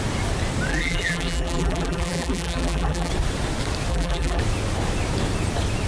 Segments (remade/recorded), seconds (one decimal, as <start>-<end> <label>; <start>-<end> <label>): 0.0-0.7 recorded; 0.7-3.1 remade; 3.1-3.9 recorded; 3.9-4.4 remade; 4.4-5.9 recorded